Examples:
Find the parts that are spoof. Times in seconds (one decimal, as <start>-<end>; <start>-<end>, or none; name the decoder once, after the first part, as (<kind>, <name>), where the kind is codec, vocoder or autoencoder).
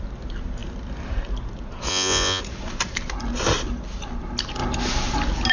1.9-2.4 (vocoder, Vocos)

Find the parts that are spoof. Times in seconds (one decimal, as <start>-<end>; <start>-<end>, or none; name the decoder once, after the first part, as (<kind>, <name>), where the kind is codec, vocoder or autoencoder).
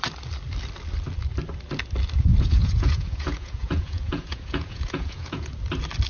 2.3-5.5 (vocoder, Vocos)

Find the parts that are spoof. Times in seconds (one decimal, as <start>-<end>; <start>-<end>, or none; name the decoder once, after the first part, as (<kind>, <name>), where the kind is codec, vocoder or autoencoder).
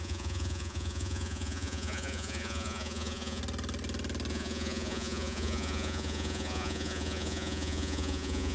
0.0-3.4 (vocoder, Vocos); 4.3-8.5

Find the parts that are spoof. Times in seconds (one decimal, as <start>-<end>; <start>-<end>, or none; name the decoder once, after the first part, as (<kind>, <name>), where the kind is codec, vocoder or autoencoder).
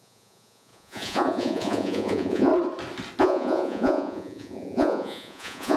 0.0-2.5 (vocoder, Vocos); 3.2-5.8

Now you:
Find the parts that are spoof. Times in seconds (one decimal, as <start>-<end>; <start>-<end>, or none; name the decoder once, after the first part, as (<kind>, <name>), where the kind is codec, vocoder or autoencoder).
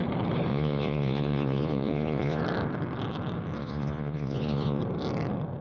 0.5-2.4 (vocoder, Vocos); 3.6-4.8